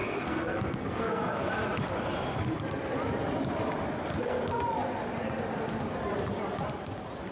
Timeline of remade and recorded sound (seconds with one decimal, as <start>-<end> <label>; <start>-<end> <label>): 0.0-1.5 remade; 1.5-4.1 recorded; 4.1-4.6 remade; 4.6-7.3 recorded